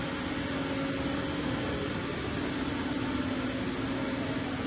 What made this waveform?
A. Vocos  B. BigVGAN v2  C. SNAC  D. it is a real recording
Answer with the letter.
D